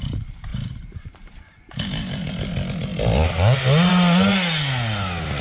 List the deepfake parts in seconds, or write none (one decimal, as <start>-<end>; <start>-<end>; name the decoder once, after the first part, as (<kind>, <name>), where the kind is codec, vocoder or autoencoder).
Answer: 0.5-2.3 (vocoder, BigVGAN v2)

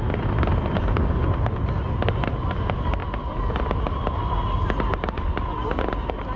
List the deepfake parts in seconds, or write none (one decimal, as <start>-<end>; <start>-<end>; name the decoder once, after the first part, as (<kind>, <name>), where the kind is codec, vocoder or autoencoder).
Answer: none

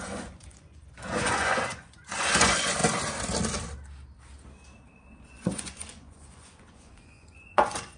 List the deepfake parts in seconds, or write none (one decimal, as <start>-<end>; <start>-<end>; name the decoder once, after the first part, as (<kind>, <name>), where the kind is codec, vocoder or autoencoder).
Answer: 0.0-2.8 (vocoder, Vocos); 5.2-8.0

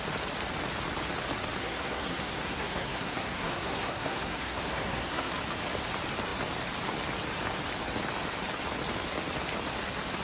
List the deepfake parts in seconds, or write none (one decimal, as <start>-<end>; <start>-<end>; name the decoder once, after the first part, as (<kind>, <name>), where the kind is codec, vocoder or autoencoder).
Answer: 1.6-5.3 (codec, SNAC)

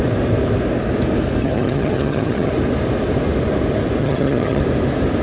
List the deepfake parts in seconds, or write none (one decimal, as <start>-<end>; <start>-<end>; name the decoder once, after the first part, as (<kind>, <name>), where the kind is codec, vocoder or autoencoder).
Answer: 1.4-2.5 (vocoder, HiFi-GAN); 4.0-4.6